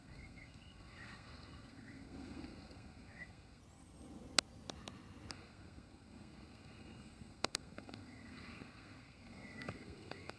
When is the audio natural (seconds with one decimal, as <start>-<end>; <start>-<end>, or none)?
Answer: 3.6-5.3